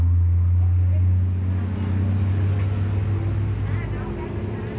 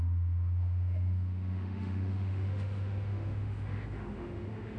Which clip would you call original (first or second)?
first